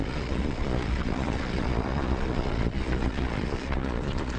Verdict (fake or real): fake